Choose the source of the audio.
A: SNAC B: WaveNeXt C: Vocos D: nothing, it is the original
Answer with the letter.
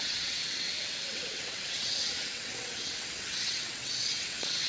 B